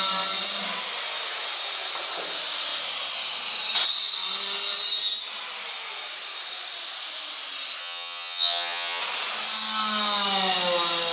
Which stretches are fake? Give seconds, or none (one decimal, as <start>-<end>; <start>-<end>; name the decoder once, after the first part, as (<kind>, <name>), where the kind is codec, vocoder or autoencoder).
7.8-9.0 (vocoder, HiFi-GAN)